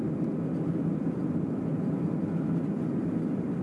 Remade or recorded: recorded